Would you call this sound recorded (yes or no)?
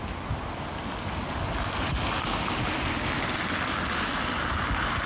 yes